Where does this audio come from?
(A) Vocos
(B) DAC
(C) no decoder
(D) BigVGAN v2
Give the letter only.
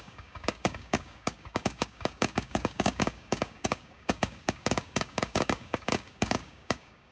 B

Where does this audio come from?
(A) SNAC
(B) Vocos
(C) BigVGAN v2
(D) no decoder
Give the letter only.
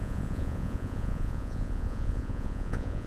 B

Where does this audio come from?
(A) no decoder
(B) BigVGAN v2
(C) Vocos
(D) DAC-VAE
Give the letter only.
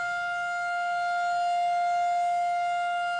A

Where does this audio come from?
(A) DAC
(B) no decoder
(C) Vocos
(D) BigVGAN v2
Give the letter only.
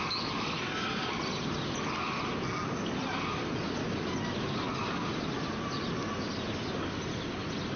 B